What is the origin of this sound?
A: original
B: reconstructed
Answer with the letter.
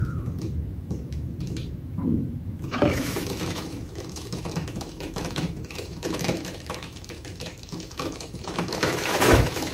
B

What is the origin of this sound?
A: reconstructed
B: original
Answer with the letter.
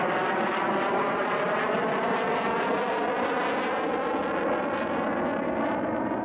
B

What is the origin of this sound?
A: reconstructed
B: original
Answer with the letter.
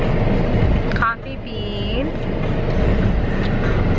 B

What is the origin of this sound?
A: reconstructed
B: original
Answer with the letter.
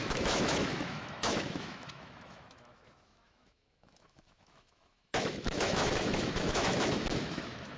A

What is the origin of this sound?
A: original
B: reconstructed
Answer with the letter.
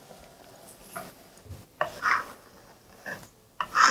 A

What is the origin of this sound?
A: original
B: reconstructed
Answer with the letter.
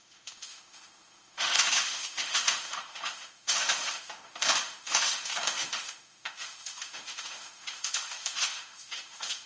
B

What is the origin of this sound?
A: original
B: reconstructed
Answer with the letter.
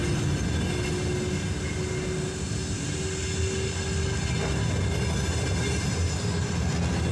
A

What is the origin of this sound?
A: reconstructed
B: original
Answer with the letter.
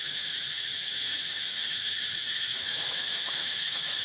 A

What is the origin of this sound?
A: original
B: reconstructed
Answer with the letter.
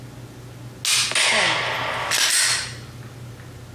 A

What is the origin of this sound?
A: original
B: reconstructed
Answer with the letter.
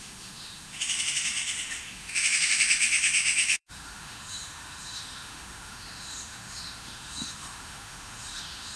B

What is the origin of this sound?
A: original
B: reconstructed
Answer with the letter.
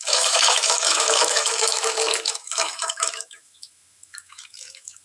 B